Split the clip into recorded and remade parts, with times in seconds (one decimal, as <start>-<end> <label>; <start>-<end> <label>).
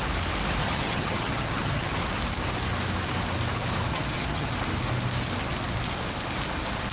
0.0-0.6 recorded; 0.6-1.9 remade; 1.9-3.9 recorded; 3.9-4.5 remade; 4.5-6.9 recorded